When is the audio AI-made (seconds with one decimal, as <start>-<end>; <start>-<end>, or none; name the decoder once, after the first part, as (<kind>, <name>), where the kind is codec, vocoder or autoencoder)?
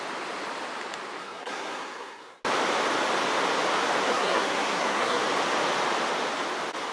1.2-2.4 (codec, SNAC); 4.1-5.2